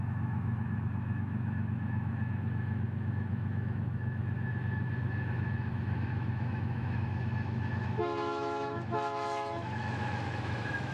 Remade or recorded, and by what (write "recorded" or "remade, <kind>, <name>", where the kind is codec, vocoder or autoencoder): remade, autoencoder, DAC-VAE